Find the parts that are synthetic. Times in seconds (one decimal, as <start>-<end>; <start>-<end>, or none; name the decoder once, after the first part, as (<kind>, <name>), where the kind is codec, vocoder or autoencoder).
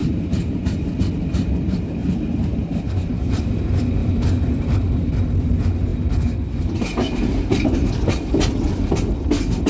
0.0-0.6 (vocoder, BigVGAN v2); 2.0-3.4; 4.0-5.1